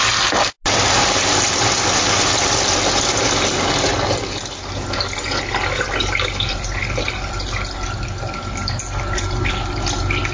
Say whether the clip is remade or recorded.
recorded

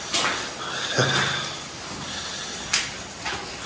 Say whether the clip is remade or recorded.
recorded